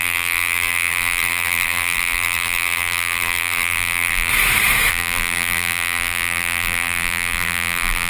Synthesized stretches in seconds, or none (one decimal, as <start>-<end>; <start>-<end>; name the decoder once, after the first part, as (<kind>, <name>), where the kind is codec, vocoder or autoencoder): 0.0-4.3 (vocoder, BigVGAN v2); 4.9-8.1